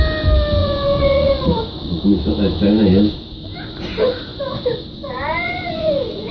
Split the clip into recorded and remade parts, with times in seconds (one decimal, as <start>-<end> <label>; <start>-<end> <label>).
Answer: 0.0-0.6 recorded; 0.6-2.2 remade; 2.2-4.3 recorded; 4.3-6.3 remade